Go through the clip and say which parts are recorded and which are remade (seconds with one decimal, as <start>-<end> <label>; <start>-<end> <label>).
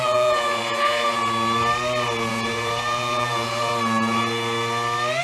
0.0-1.2 remade; 1.2-2.3 recorded; 2.3-3.7 remade; 3.7-5.2 recorded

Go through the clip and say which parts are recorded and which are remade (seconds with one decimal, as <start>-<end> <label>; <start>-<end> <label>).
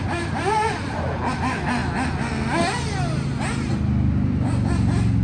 0.0-5.2 recorded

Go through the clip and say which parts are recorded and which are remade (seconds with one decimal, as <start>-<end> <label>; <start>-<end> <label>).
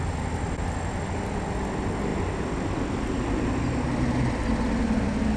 0.0-5.4 recorded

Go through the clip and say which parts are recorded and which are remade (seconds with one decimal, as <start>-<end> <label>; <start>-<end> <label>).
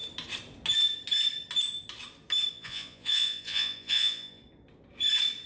0.0-2.5 recorded; 2.5-4.4 remade; 4.4-5.5 recorded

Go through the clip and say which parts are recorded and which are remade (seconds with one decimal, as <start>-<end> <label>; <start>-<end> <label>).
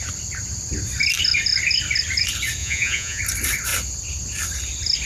0.0-2.6 recorded; 2.6-3.2 remade; 3.2-5.1 recorded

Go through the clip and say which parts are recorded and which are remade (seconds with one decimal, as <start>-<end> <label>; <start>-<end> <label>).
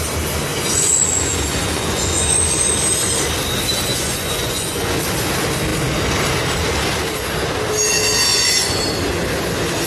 0.0-0.5 recorded; 0.5-2.7 remade; 2.7-3.9 recorded; 3.9-5.0 remade; 5.0-8.3 recorded; 8.3-8.8 remade; 8.8-9.9 recorded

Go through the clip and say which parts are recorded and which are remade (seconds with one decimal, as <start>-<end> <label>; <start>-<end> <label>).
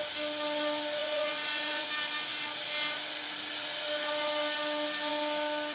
0.0-1.0 recorded; 1.0-1.9 remade; 1.9-5.7 recorded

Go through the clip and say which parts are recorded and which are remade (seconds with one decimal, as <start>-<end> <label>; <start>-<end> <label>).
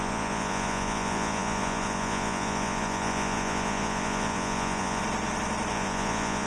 0.0-5.0 remade; 5.0-5.7 recorded; 5.7-6.5 remade